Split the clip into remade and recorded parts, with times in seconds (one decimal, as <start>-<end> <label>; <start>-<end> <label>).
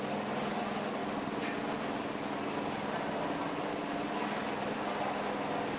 0.0-5.8 recorded